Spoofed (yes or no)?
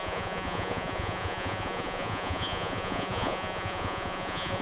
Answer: yes